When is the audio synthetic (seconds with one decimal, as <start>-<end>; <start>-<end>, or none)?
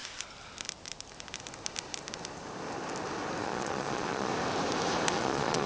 3.4-4.3; 5.1-5.7